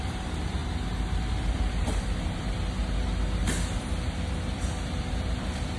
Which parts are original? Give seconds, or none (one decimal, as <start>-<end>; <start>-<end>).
0.6-1.2; 2.8-3.8